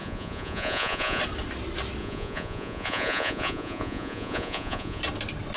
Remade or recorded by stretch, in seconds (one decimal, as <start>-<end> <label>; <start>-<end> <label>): 0.0-1.2 remade; 1.2-2.0 recorded; 2.0-5.0 remade; 5.0-5.6 recorded